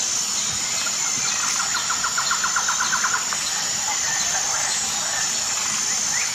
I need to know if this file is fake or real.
real